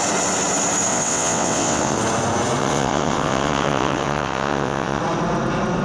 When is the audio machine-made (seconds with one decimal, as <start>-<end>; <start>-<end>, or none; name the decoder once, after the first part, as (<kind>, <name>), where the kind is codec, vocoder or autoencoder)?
0.9-2.0 (vocoder, WaveNeXt); 2.6-5.0